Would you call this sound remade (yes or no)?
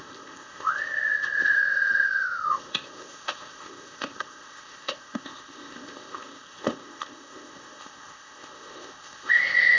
yes